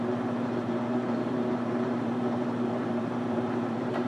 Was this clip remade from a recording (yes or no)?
yes